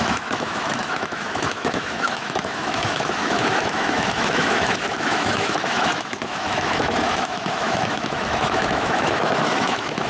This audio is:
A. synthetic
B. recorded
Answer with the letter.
A